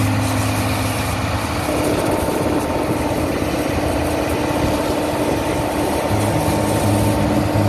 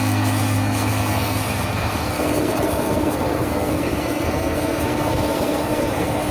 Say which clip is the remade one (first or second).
second